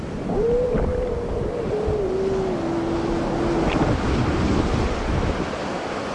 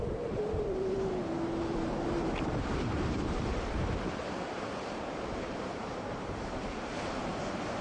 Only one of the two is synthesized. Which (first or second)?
second